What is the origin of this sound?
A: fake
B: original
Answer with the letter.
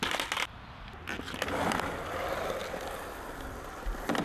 B